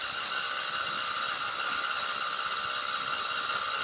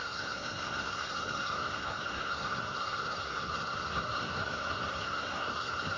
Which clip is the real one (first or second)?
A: first